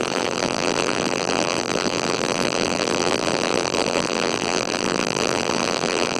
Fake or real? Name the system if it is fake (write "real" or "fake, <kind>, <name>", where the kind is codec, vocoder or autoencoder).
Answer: fake, vocoder, BigVGAN v2